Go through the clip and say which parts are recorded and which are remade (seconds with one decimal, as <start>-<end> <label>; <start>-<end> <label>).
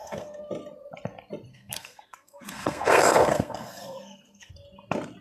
0.0-0.5 remade; 0.5-1.5 recorded; 1.5-4.5 remade; 4.5-5.2 recorded